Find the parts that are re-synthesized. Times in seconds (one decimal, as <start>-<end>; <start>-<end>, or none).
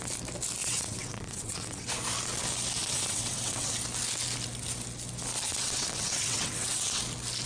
0.6-1.9; 2.8-3.8; 5.5-7.0